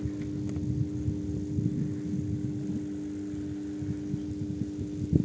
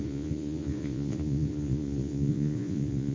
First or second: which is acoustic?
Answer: first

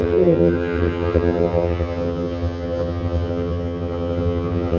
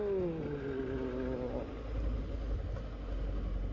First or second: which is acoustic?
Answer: second